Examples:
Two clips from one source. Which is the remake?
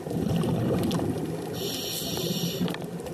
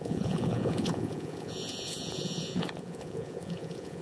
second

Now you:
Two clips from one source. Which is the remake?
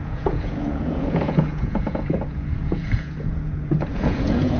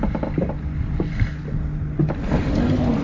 first